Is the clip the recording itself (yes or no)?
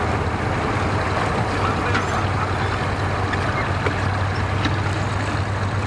yes